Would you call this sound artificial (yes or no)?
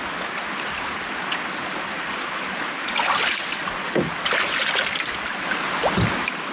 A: no